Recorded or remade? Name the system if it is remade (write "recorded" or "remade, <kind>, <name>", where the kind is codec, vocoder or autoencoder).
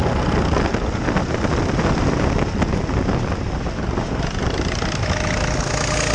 recorded